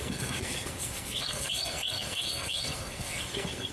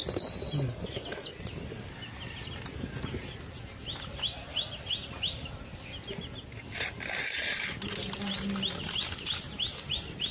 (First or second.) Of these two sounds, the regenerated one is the first